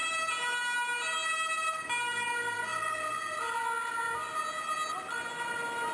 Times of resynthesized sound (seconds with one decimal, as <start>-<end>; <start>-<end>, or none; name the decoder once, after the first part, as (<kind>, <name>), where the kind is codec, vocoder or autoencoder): none